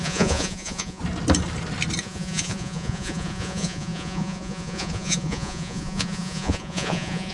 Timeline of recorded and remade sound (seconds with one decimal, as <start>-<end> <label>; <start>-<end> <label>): 0.0-1.0 remade; 1.0-2.0 recorded; 2.0-7.3 remade